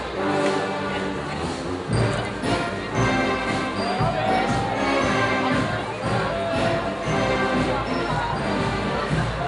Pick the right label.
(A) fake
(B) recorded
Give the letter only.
B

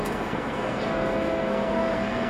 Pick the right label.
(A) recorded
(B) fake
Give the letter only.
B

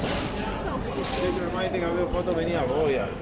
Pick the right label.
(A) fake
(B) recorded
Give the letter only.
B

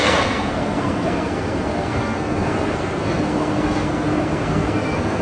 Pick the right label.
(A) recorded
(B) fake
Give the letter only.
B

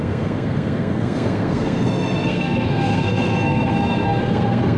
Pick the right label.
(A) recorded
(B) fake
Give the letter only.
B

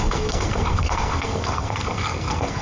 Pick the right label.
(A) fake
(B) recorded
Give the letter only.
A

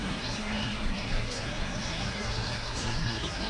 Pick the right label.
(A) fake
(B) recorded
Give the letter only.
A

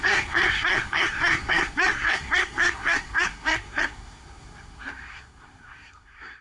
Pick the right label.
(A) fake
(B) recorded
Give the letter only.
A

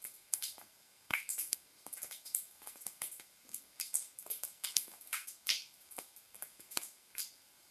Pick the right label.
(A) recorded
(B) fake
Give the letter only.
B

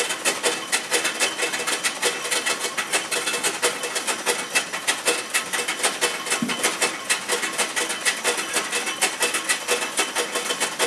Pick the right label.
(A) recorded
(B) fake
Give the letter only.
A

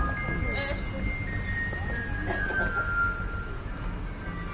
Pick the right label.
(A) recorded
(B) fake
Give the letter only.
A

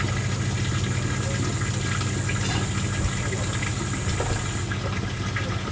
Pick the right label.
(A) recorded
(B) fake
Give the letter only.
A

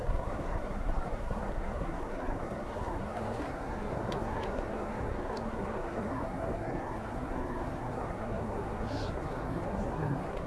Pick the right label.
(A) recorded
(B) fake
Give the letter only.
B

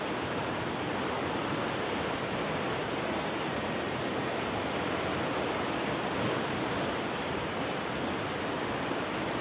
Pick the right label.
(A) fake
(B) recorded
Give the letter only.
B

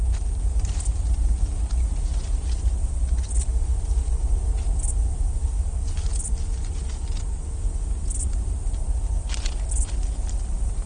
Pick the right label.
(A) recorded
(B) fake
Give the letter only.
A